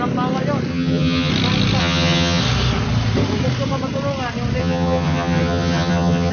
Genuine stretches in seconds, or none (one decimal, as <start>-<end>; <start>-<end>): 0.0-0.7; 1.3-1.8; 2.4-4.6